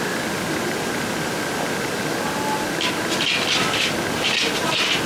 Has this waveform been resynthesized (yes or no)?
no